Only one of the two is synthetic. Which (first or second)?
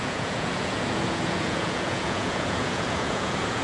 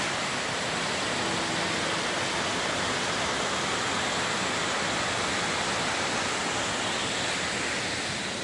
first